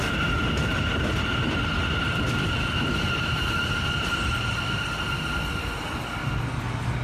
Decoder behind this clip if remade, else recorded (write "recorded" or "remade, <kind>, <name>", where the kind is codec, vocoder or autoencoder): recorded